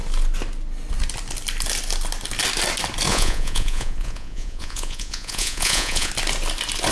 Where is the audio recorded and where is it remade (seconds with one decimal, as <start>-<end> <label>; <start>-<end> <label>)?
0.0-3.1 recorded; 3.1-6.1 remade; 6.1-6.9 recorded